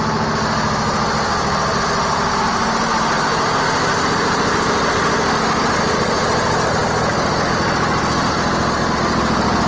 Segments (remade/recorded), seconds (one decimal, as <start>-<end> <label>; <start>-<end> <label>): 0.0-9.7 recorded